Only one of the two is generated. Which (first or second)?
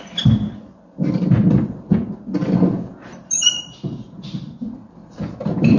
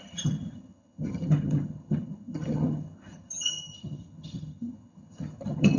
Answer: second